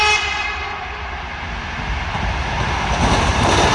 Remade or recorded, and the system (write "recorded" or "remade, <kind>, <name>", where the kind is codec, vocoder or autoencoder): recorded